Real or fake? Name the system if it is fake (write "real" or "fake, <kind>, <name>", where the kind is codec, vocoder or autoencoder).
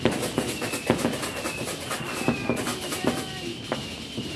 real